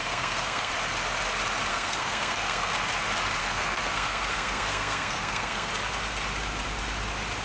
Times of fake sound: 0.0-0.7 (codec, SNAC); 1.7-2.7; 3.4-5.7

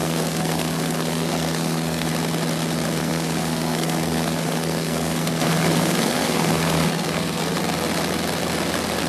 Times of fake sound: 0.0-2.1 (codec, SNAC); 3.0-7.6

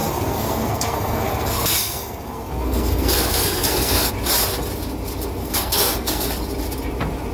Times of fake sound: 0.0-4.1 (codec, SNAC); 5.4-6.3

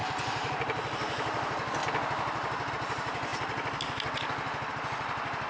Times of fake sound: none

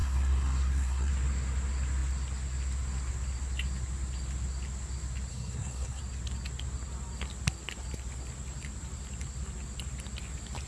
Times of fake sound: 0.0-1.1 (codec, SNAC); 5.3-6.0

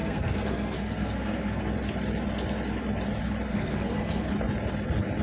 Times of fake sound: 0.0-1.6 (codec, SNAC); 3.5-4.3